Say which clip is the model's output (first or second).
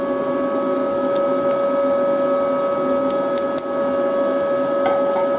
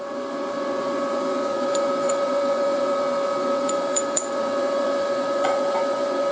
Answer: second